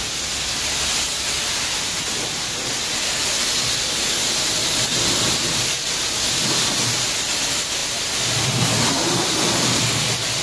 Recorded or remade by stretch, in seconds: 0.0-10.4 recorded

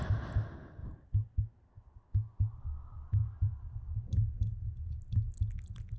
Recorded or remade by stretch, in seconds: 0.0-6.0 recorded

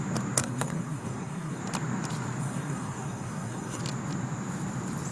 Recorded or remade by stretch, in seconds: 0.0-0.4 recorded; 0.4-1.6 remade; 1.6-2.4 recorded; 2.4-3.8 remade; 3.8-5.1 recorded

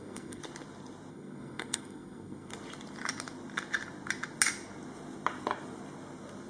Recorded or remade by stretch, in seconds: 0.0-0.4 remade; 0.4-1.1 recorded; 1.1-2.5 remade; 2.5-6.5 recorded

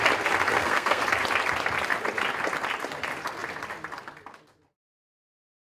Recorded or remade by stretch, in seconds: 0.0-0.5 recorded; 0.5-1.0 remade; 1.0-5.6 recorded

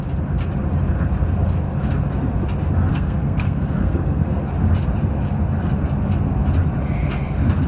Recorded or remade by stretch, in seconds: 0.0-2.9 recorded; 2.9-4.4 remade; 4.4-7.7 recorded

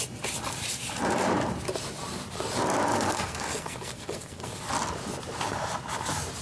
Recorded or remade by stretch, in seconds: 0.0-2.9 recorded; 2.9-4.6 remade; 4.6-6.4 recorded